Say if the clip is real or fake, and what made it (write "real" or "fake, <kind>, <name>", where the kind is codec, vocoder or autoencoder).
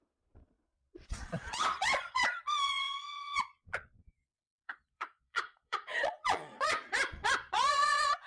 fake, vocoder, Vocos